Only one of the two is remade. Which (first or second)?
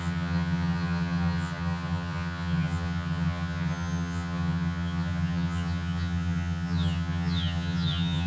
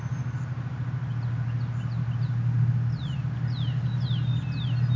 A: first